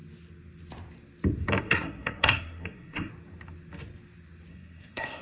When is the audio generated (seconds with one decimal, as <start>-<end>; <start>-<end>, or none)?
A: 1.6-3.1; 4.5-5.2